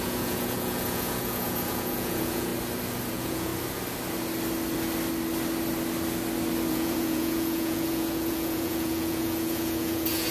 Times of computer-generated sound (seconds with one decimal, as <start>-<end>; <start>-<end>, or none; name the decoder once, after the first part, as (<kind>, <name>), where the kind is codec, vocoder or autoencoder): 0.0-2.5 (vocoder, Vocos); 3.1-3.5; 6.7-10.3